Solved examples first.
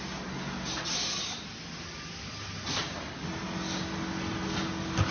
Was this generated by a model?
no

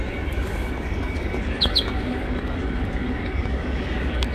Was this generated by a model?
yes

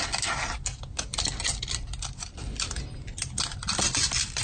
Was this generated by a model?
no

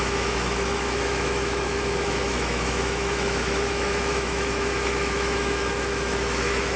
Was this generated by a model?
yes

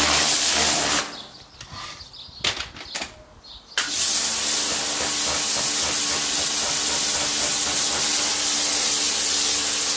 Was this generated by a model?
no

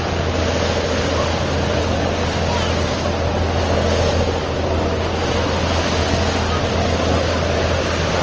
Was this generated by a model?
no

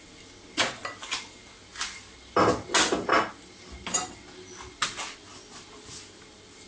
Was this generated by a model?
no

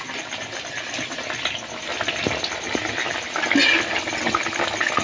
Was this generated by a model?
no